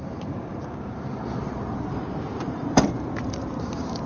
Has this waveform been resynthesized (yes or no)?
yes